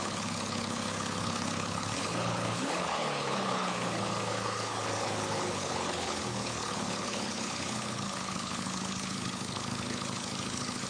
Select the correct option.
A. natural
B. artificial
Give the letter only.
B